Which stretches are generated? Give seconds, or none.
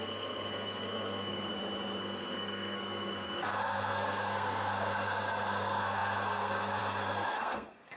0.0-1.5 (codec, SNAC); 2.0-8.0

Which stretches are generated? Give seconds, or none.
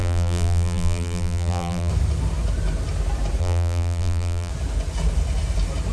0.0-1.9 (vocoder, BigVGAN v2); 3.4-4.5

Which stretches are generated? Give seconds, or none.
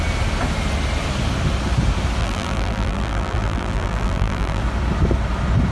2.2-4.6 (vocoder, BigVGAN v2)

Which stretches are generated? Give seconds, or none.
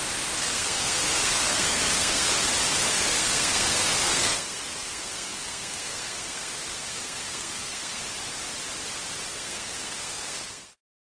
0.4-2.5 (codec, SNAC); 2.9-8.0; 9.3-11.1